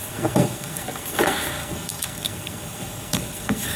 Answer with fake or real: fake